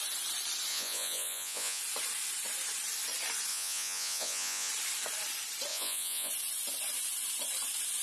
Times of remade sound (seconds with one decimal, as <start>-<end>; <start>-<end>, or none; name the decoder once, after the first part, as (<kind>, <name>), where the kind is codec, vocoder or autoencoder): 0.7-1.8 (vocoder, Vocos); 3.5-4.7; 5.7-6.3